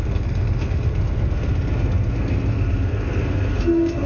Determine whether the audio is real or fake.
fake